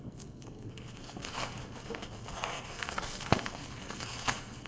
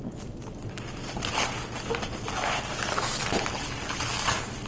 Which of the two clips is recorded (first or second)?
second